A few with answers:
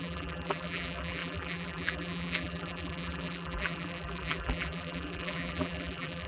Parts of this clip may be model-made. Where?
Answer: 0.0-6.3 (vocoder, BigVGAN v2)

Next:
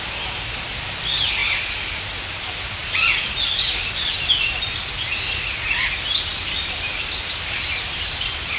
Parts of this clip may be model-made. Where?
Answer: 2.8-4.8 (vocoder, BigVGAN v2); 6.3-8.6